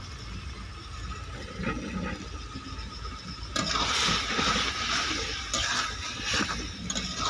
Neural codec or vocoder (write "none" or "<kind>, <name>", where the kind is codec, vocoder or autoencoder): none